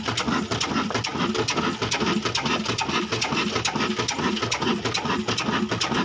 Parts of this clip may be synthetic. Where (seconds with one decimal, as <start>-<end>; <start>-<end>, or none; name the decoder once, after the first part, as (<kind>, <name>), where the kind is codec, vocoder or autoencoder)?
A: none